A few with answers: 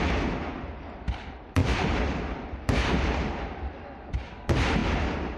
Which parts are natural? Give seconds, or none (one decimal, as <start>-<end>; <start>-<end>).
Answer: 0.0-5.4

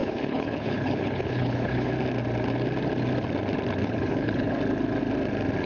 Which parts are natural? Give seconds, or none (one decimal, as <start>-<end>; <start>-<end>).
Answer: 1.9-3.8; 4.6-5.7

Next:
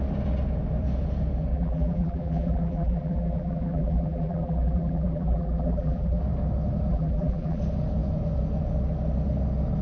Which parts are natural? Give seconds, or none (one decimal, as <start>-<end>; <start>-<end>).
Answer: 0.0-1.5; 6.2-6.9; 7.6-9.8

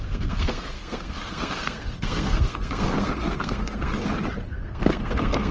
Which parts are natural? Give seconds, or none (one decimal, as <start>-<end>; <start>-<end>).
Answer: 3.9-4.5